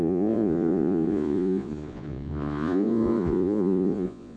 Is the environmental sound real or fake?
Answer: fake